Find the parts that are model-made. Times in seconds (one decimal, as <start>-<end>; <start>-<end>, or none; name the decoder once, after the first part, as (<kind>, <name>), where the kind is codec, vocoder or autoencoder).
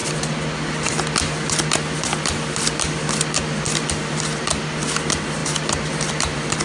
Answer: none